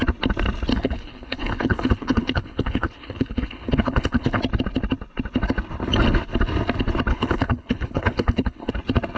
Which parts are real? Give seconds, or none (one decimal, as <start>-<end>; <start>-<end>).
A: 0.0-0.7; 4.4-7.1; 8.7-9.2